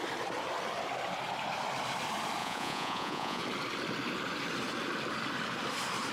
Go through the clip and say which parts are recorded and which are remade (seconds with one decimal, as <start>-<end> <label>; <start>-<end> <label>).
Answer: 0.0-2.4 recorded; 2.4-3.4 remade; 3.4-6.1 recorded